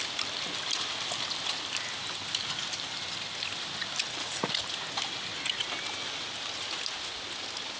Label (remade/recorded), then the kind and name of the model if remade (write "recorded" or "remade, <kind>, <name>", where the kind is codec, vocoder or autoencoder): recorded